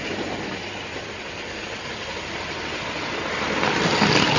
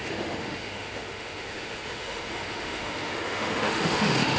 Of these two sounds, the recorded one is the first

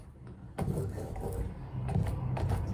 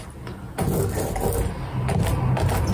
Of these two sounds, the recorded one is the second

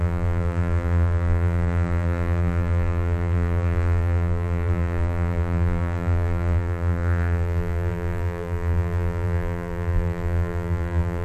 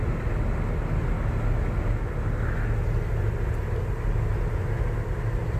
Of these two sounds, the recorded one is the second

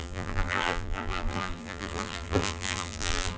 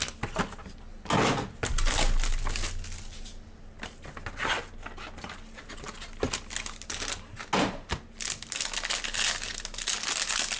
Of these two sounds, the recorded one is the second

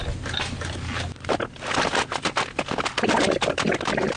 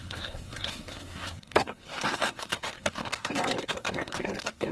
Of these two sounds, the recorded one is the first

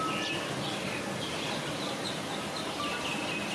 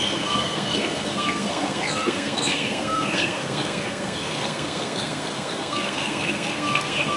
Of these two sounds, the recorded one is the first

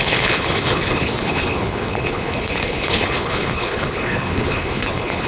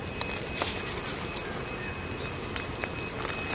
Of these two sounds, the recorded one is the second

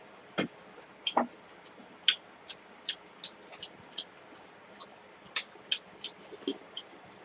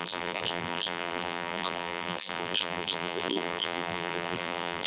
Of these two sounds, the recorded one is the first